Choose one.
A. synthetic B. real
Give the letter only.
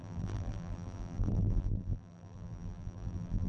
A